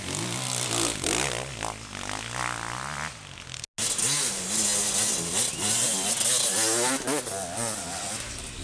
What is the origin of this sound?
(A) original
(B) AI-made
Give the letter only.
A